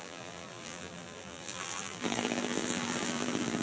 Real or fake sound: fake